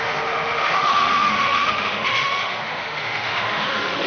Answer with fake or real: fake